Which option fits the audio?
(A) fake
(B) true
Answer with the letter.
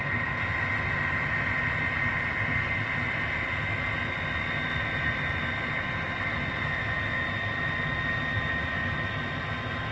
B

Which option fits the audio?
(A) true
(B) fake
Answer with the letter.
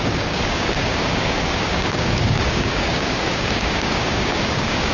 B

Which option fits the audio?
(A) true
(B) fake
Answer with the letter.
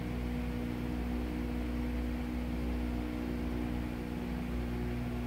A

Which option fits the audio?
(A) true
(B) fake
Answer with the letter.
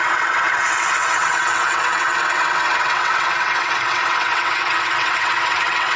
B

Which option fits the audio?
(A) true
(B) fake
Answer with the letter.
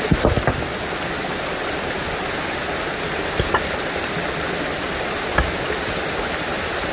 A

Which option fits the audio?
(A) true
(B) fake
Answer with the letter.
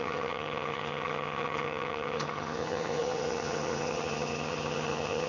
B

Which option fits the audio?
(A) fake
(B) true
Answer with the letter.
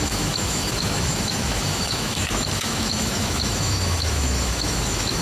A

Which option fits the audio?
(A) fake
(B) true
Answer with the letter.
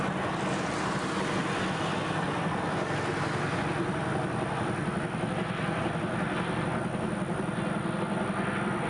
B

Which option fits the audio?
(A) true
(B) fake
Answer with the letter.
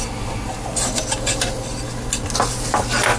A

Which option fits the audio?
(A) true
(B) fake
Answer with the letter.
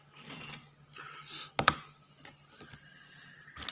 A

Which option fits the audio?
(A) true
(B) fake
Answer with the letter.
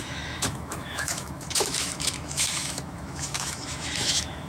B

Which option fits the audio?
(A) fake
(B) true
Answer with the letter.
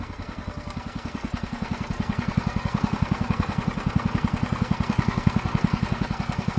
A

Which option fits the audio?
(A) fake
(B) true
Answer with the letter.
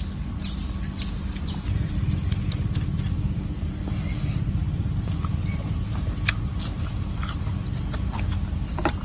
B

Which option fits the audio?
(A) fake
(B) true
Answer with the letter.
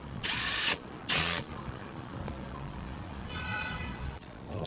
A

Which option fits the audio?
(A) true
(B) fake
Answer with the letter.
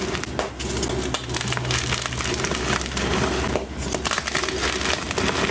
A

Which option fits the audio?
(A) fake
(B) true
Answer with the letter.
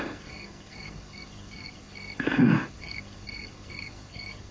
A